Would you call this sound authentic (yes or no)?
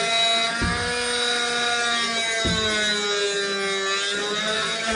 yes